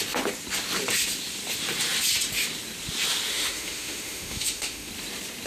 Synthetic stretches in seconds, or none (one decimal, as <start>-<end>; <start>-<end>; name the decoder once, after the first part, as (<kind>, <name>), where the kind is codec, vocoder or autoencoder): 3.3-4.9 (autoencoder, DAC-VAE)